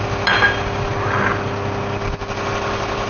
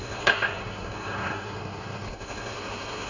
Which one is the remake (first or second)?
second